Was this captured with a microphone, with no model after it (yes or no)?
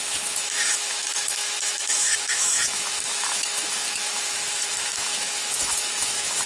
no